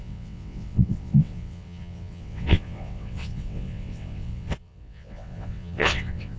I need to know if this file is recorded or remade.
remade